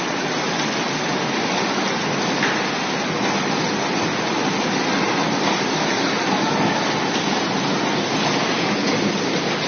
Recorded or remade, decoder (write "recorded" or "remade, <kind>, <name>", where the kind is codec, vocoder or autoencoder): recorded